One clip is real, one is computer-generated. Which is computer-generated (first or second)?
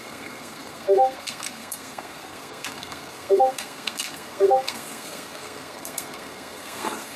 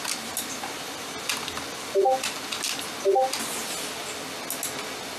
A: first